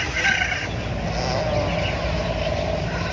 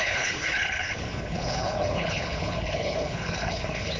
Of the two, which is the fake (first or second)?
second